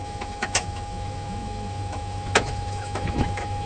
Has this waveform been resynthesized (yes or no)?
yes